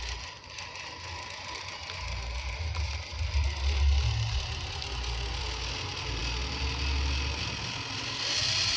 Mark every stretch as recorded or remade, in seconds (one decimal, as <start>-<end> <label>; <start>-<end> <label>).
0.0-8.8 recorded